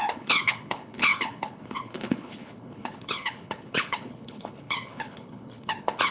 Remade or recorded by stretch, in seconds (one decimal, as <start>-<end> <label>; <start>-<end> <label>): 0.0-6.1 remade